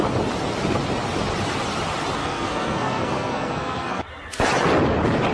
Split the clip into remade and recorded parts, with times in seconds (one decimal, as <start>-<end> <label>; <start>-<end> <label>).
0.0-2.2 recorded; 2.2-4.0 remade; 4.0-5.3 recorded